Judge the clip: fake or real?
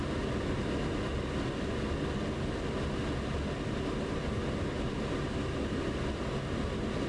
real